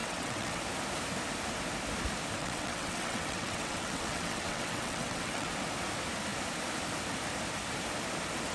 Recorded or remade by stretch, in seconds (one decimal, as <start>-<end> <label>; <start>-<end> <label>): 0.0-0.6 remade; 0.6-2.4 recorded; 2.4-5.5 remade; 5.5-8.5 recorded